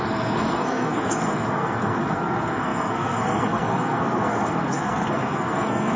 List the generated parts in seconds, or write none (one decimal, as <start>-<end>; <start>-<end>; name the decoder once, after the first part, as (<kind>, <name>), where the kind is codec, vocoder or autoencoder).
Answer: 0.0-6.0 (codec, SNAC)